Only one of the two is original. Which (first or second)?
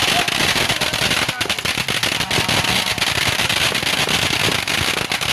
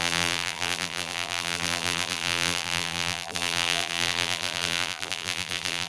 first